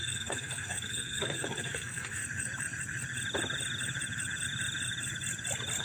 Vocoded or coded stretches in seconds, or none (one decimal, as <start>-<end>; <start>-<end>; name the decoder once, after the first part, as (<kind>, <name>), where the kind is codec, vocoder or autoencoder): 0.0-2.2 (codec, SNAC)